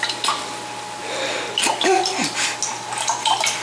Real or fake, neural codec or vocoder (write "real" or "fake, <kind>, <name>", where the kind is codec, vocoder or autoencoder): real